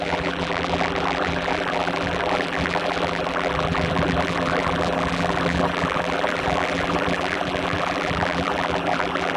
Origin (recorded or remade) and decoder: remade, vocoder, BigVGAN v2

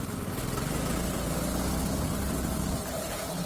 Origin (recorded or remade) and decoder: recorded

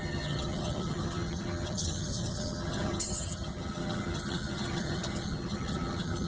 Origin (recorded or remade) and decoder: remade, vocoder, HiFi-GAN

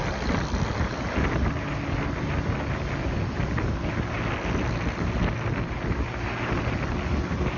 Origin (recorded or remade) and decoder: recorded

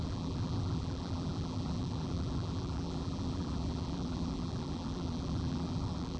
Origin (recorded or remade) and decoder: remade, vocoder, BigVGAN v2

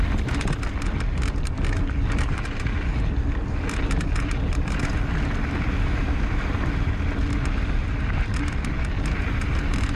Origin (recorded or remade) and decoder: recorded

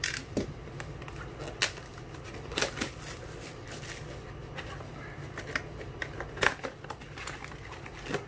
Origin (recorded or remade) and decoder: recorded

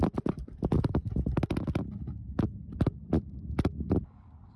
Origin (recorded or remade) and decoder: recorded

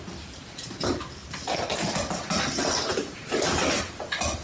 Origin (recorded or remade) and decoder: recorded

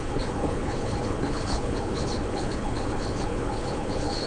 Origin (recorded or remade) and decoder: remade, codec, HILCodec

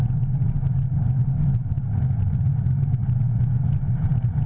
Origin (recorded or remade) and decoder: recorded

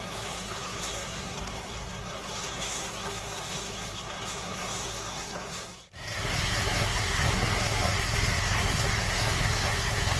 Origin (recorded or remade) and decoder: remade, codec, SNAC